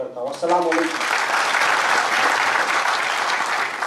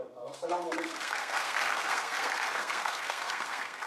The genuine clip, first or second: first